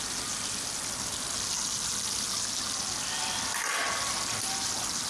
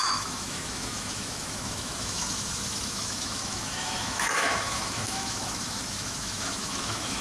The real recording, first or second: first